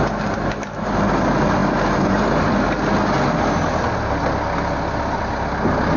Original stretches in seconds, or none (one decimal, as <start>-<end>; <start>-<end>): 0.0-6.0